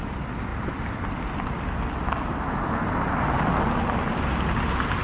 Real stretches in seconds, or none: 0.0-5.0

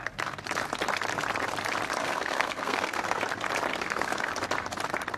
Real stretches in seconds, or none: 0.0-2.0; 3.2-3.7; 4.3-5.2

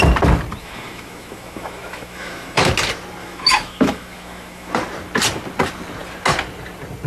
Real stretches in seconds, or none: 0.0-0.6; 2.7-3.2; 4.7-7.1

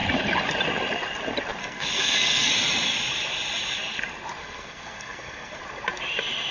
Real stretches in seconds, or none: 0.0-1.6; 2.5-4.4; 5.6-6.5

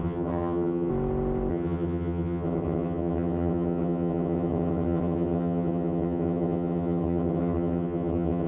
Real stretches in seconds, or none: 0.9-1.5